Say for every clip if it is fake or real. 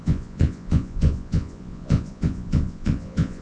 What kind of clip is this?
fake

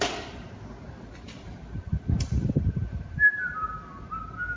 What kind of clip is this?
fake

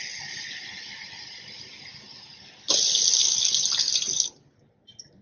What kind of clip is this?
real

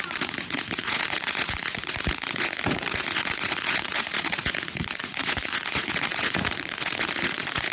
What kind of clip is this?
fake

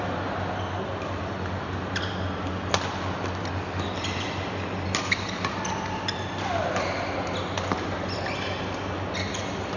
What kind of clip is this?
real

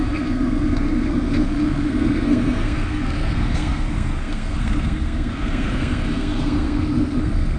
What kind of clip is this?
fake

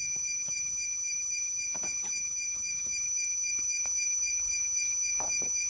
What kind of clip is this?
fake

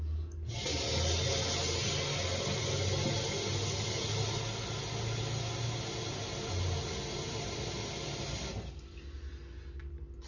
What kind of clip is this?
real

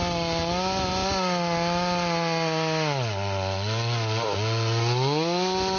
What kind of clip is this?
real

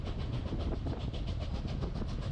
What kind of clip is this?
real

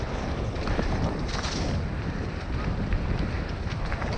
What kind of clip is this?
real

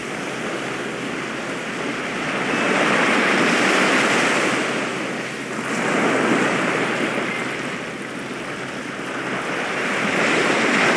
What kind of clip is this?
real